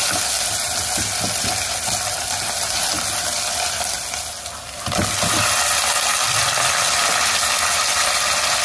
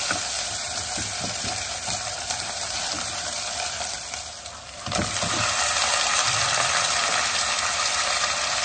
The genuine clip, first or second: first